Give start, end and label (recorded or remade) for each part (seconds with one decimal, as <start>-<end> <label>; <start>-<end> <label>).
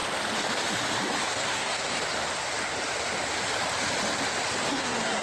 0.0-1.2 recorded; 1.2-2.0 remade; 2.0-4.7 recorded; 4.7-5.2 remade